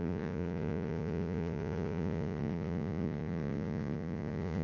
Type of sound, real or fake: fake